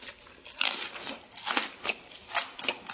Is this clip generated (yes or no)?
no